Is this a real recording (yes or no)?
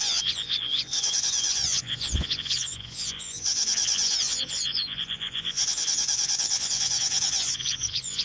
no